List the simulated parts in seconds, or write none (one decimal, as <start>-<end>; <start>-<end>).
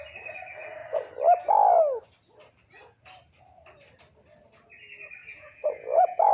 5.2-6.3